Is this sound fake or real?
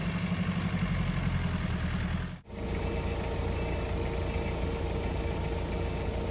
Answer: real